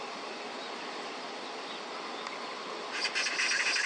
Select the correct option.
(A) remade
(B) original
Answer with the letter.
B